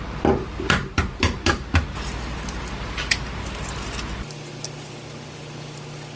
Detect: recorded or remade recorded